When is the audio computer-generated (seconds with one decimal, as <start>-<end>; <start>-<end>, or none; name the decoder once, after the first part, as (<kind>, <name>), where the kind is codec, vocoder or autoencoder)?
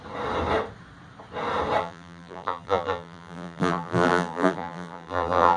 1.8-5.6 (vocoder, BigVGAN v2)